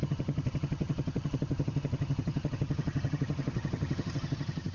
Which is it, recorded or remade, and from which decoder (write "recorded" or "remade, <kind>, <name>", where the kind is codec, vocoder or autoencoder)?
remade, vocoder, HiFi-GAN